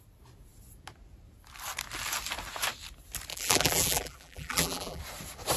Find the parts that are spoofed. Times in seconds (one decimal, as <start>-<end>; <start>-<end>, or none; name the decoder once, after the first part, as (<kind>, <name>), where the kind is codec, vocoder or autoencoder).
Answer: 3.3-5.0 (vocoder, BigVGAN v2)